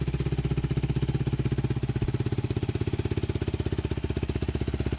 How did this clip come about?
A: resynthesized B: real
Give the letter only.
B